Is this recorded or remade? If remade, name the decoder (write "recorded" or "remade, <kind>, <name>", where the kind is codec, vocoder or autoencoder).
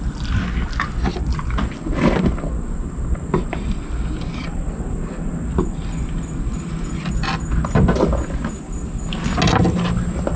recorded